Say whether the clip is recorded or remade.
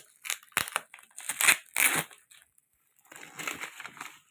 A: recorded